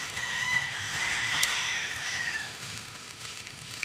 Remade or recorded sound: remade